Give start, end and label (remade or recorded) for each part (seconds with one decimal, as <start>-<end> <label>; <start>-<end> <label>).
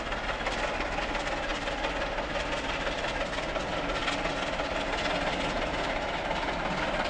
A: 0.0-7.1 recorded